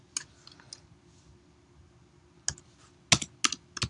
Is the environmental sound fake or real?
real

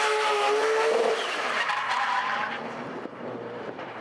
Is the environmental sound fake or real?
fake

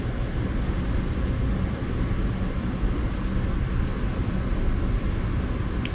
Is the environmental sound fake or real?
real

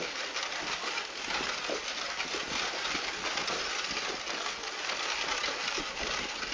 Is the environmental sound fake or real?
real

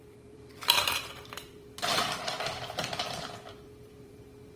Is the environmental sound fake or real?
fake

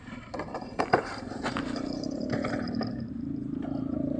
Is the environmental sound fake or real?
fake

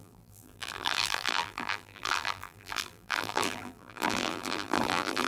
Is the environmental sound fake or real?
fake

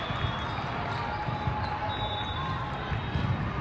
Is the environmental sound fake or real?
fake